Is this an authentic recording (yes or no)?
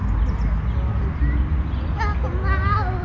yes